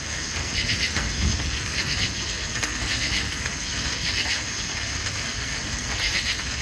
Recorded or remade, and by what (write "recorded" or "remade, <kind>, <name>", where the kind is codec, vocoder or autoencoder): remade, codec, SNAC